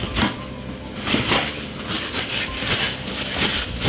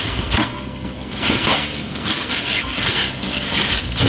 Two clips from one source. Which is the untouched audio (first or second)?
first